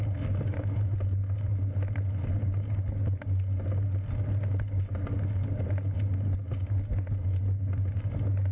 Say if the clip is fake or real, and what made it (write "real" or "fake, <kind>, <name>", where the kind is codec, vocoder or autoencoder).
real